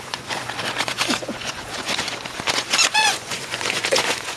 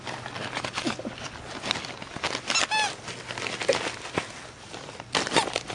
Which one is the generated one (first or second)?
first